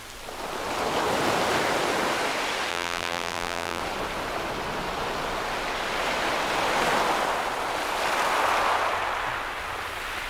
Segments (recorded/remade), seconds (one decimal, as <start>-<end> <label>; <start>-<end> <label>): 0.0-2.7 recorded; 2.7-3.8 remade; 3.8-10.3 recorded